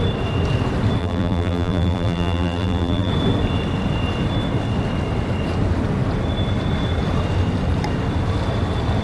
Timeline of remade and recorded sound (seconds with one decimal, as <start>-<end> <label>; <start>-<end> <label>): 0.0-1.0 recorded; 1.0-3.1 remade; 3.1-9.0 recorded